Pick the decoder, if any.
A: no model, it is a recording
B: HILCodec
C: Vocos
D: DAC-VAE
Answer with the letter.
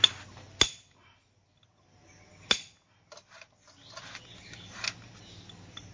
A